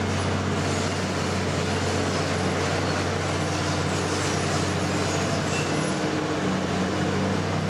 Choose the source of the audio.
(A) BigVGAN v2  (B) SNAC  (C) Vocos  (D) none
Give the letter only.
D